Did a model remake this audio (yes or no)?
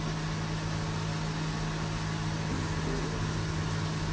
no